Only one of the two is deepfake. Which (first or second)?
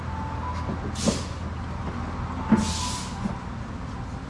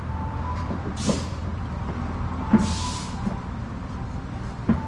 second